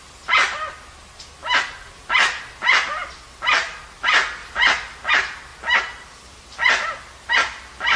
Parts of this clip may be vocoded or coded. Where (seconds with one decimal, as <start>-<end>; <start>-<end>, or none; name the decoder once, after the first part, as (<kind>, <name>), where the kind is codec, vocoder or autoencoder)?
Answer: 4.4-5.1 (vocoder, BigVGAN v2)